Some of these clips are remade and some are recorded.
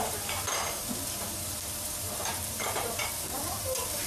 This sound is remade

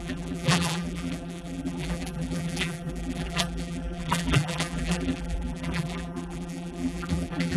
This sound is remade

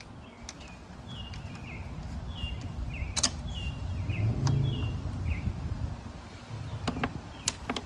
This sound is recorded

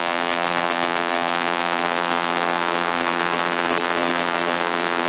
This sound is remade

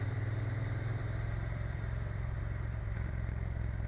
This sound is remade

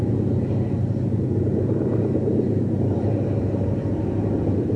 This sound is remade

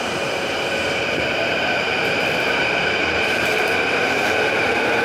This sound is remade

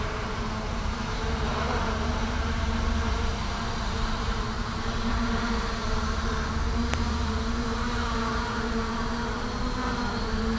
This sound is remade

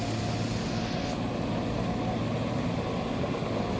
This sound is recorded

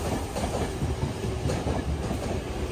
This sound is recorded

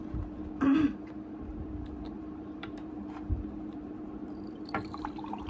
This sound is remade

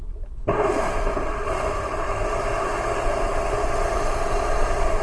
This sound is recorded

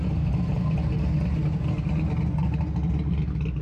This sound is recorded